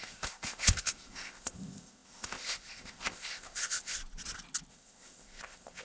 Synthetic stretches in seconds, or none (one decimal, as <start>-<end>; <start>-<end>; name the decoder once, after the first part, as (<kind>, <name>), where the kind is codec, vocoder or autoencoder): 0.0-4.0 (codec, ZipCodec); 4.7-5.8